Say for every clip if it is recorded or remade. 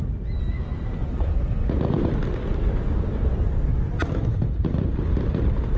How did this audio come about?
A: recorded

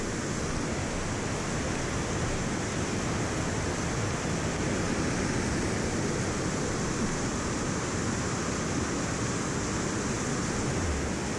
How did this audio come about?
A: recorded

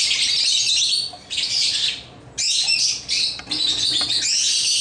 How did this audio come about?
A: recorded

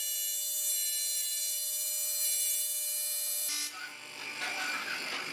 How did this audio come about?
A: recorded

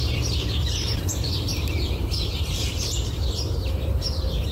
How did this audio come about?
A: remade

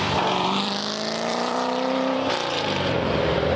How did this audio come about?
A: remade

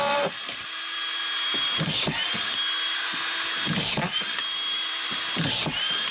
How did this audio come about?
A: remade